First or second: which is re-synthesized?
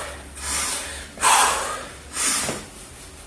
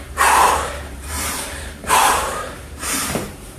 second